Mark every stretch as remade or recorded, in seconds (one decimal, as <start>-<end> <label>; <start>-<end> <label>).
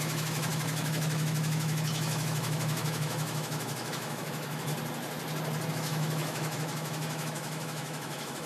0.0-4.7 remade; 4.7-5.7 recorded; 5.7-8.5 remade